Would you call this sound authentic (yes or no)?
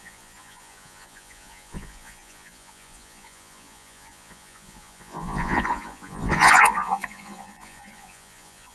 no